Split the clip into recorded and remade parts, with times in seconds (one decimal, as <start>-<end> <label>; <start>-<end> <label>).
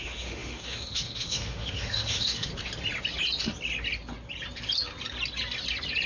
0.0-2.5 remade; 2.5-6.1 recorded